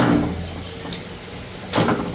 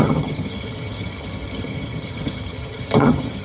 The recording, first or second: first